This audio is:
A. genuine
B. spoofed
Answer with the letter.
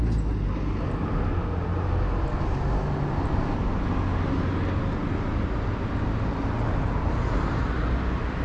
A